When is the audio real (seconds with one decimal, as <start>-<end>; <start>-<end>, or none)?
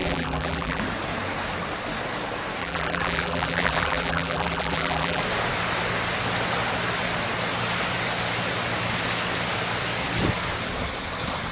0.8-2.6; 5.2-11.5